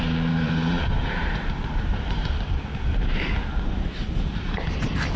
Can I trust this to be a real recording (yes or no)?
no